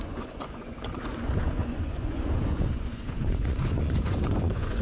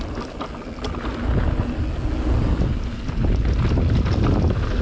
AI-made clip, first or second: first